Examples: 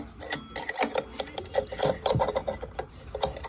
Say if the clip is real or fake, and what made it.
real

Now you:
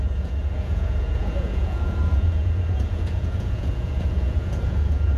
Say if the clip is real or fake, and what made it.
fake, vocoder, Vocos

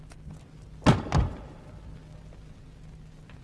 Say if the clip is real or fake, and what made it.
real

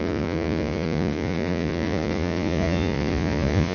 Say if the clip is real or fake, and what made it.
fake, vocoder, Vocos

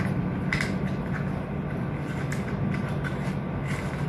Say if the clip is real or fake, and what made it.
real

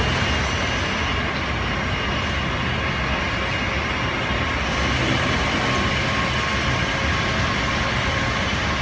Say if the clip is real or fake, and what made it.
real